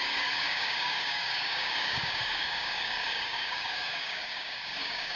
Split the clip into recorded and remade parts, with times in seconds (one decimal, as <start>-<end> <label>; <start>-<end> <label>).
0.0-5.2 remade